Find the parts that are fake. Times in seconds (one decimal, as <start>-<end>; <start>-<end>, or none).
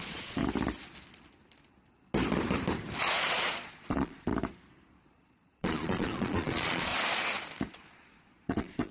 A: 0.0-0.4; 3.0-4.3; 5.0-6.9; 7.7-8.9